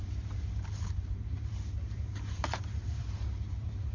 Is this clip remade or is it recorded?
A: remade